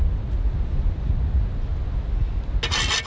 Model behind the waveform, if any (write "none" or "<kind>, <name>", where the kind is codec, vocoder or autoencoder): none